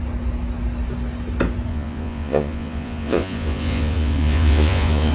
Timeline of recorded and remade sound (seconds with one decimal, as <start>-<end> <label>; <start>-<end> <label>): 0.0-1.7 recorded; 1.7-5.1 remade